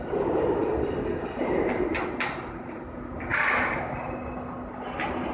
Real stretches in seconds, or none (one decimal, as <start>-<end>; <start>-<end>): 0.0-5.3